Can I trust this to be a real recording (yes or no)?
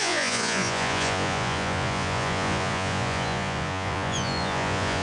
no